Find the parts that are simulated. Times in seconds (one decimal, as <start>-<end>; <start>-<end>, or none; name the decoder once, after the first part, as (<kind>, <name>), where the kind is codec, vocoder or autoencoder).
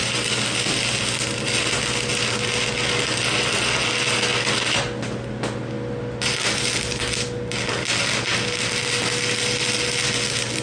none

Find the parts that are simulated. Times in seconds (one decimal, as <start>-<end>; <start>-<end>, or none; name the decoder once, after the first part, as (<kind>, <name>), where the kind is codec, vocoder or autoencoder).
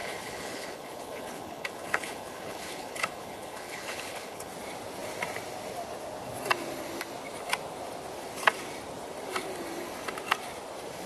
0.0-4.5 (codec, HILCodec)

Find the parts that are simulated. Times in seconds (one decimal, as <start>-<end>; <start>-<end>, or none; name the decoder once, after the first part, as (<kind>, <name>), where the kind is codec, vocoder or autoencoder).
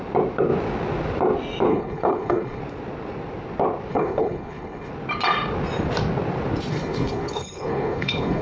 1.7-2.6 (codec, HILCodec); 3.9-4.9; 6.7-8.4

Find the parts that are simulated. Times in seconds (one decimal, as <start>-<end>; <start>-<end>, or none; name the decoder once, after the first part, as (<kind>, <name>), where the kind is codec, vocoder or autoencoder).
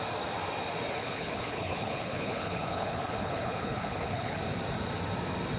1.0-4.4 (codec, HILCodec)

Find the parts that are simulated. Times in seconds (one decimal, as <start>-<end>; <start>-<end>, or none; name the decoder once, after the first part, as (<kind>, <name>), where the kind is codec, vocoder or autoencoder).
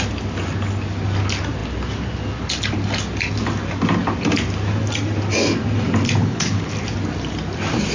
6.2-6.7 (codec, HILCodec)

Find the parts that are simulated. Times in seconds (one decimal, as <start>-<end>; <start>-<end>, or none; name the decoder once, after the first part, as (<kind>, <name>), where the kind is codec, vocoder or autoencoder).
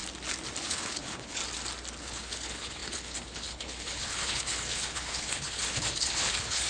0.6-1.4 (codec, HILCodec); 2.0-6.7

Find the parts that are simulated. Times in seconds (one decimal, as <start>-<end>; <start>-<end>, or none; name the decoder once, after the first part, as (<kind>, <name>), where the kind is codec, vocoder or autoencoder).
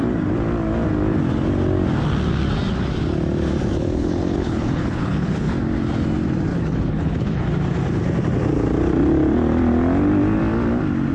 3.7-5.5 (codec, HILCodec); 6.5-7.4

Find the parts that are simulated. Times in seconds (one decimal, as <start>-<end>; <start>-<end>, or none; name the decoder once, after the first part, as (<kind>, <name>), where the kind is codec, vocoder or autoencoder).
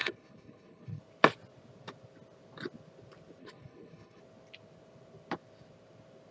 0.0-1.0 (codec, HILCodec); 3.4-4.2